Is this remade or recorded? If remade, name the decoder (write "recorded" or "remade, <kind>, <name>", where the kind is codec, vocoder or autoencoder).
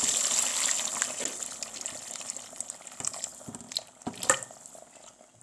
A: recorded